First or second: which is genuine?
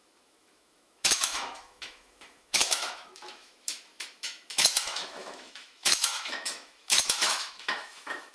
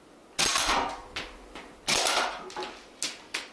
second